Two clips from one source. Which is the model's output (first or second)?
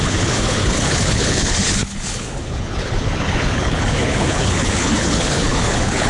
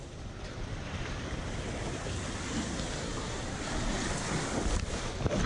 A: first